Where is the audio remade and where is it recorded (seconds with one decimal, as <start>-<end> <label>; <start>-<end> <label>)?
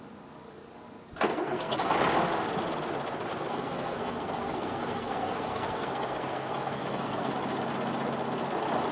0.0-1.3 recorded; 1.3-1.9 remade; 1.9-3.3 recorded; 3.3-7.3 remade; 7.3-8.9 recorded